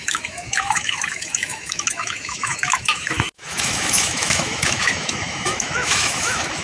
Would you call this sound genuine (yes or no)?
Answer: no